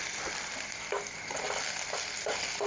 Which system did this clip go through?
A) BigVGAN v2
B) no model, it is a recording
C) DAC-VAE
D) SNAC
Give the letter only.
B